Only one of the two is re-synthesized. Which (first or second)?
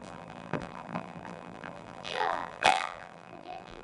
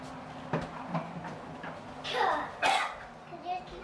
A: first